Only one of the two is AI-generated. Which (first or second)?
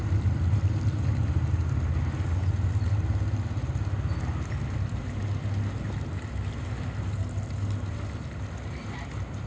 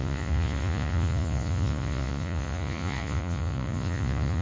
second